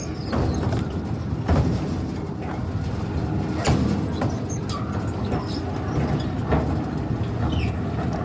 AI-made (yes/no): no